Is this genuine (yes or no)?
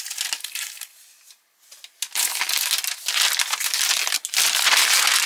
yes